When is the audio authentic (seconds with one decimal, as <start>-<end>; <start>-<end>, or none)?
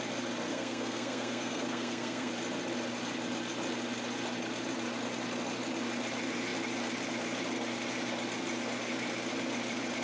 0.0-0.5; 2.3-10.0